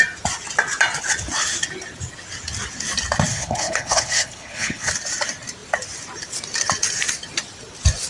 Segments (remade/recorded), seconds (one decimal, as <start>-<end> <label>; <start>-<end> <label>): 0.0-3.3 recorded; 3.3-4.9 remade; 4.9-8.1 recorded